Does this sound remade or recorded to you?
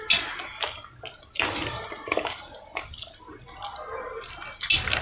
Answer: recorded